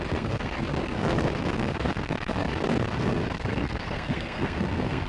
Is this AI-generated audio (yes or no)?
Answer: yes